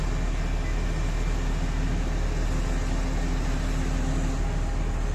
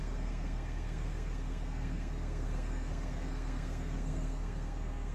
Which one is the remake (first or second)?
second